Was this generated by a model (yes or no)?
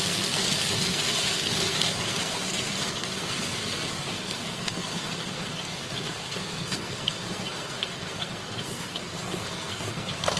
yes